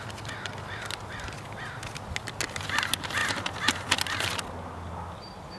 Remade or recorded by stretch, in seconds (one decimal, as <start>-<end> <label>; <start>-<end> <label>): 0.0-5.6 recorded